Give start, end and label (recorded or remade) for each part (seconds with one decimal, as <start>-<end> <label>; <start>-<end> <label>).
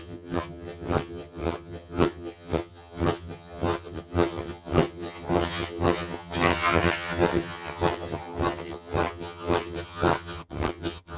0.0-11.2 remade